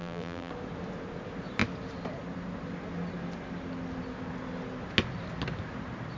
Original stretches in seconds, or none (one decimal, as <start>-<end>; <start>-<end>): 0.5-6.2